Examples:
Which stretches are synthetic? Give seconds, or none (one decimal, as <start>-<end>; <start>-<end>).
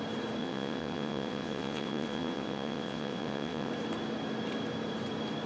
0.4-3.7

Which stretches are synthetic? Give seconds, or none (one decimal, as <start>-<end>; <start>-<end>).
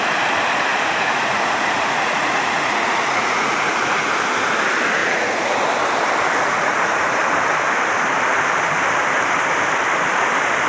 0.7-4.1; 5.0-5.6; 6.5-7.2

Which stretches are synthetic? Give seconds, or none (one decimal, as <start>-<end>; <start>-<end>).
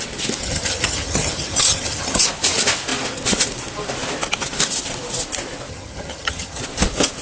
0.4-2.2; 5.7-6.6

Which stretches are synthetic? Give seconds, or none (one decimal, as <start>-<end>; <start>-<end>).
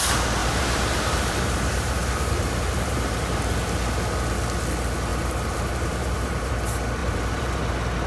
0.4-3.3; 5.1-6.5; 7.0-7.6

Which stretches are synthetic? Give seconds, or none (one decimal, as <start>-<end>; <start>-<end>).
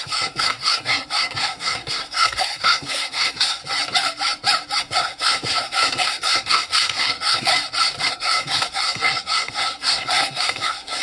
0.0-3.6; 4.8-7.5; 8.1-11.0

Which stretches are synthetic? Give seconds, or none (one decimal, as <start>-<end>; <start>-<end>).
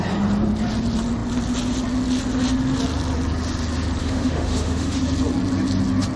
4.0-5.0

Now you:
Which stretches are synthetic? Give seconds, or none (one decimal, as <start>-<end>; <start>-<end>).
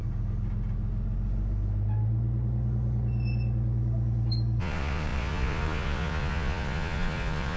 4.6-7.6